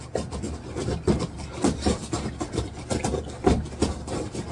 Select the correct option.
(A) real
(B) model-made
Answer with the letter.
A